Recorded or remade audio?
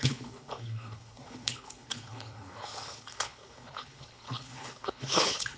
remade